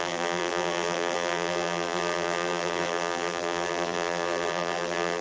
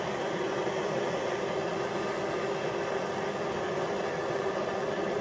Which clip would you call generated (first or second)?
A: first